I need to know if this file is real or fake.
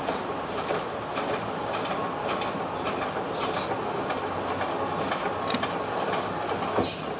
real